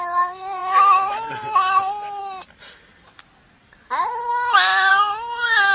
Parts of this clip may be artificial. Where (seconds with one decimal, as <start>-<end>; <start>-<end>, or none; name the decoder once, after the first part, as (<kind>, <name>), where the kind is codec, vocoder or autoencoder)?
4.3-4.9 (autoencoder, DAC-VAE)